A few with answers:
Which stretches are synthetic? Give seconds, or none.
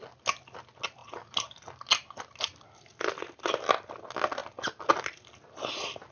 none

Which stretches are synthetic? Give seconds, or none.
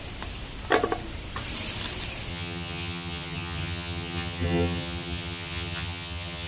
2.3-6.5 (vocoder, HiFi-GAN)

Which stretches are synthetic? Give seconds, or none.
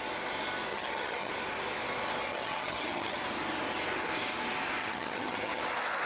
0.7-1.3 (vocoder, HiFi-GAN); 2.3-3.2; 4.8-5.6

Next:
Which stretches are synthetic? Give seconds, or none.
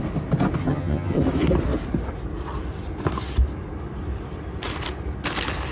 0.6-1.2 (vocoder, HiFi-GAN)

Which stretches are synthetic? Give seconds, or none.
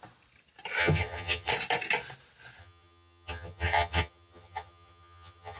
0.8-1.5 (vocoder, HiFi-GAN); 2.6-5.6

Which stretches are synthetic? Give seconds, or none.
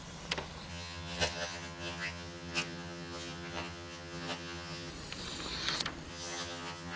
0.7-4.9 (vocoder, HiFi-GAN); 6.1-7.0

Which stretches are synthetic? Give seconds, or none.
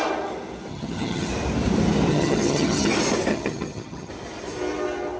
0.7-1.3 (vocoder, HiFi-GAN); 2.1-2.9; 3.3-4.1